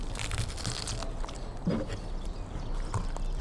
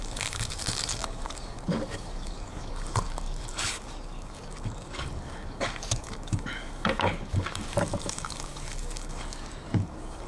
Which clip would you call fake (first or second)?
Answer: second